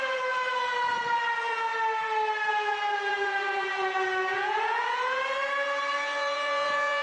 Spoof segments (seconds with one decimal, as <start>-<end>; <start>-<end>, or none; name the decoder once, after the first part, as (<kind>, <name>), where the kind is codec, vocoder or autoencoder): 0.0-1.7 (vocoder, Vocos); 2.5-7.0